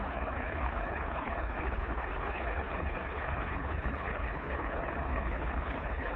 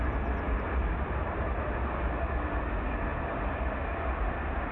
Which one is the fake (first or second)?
first